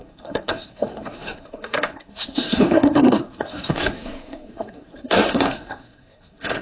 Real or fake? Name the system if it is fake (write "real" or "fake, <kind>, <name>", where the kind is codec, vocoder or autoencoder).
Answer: fake, codec, SNAC